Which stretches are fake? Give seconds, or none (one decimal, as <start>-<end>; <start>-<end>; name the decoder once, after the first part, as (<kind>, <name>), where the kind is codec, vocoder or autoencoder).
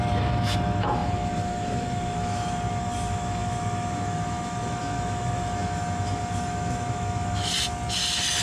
0.0-7.5 (autoencoder, DAC-VAE)